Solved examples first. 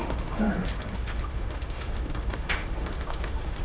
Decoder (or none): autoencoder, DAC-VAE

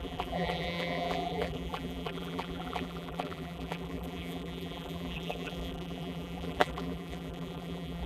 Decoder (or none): vocoder, BigVGAN v2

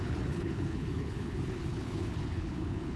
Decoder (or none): codec, HILCodec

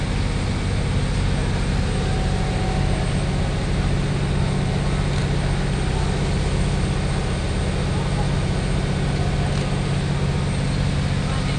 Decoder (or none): none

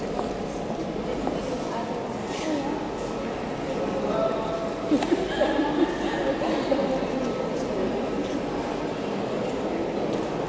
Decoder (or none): none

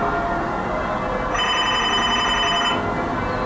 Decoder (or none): none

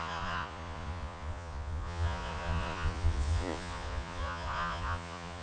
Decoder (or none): vocoder, Vocos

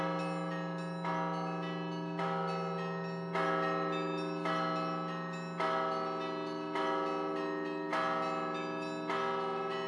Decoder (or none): none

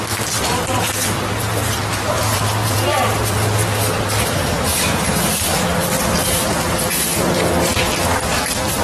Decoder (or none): vocoder, BigVGAN v2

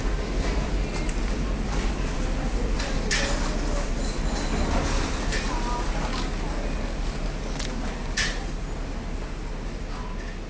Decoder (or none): none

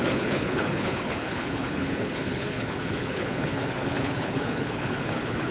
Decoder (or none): codec, HILCodec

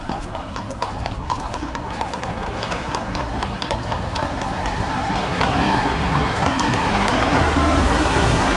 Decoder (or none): codec, SNAC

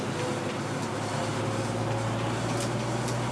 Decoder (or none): none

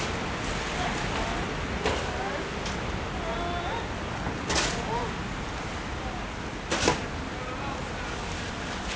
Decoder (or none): none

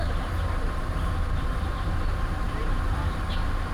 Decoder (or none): vocoder, BigVGAN v2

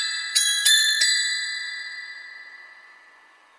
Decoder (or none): vocoder, Vocos